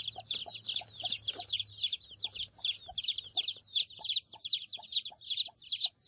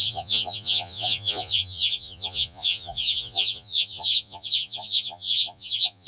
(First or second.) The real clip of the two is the first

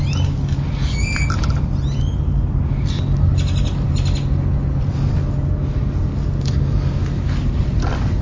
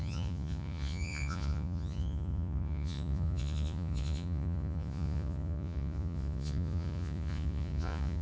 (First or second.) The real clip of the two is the first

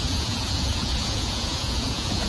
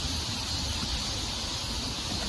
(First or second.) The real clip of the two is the second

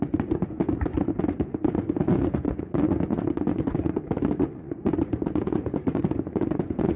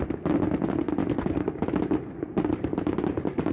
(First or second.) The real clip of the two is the second